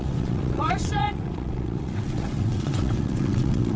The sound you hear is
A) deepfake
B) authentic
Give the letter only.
A